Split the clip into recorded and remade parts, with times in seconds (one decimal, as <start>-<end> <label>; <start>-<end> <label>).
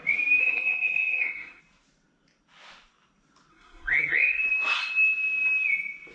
0.0-0.4 recorded; 0.4-1.6 remade; 1.6-3.5 recorded; 3.5-4.4 remade; 4.4-6.1 recorded